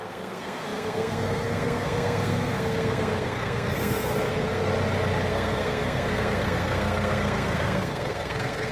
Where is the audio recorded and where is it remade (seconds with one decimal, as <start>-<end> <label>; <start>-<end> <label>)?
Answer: 0.0-4.7 remade; 4.7-5.3 recorded; 5.3-8.7 remade